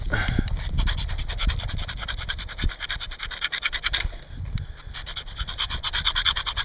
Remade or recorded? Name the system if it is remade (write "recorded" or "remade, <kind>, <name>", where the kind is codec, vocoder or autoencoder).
recorded